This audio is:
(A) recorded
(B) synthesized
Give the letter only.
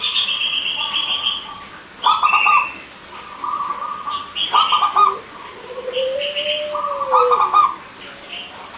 A